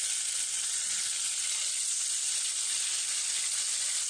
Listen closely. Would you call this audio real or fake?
real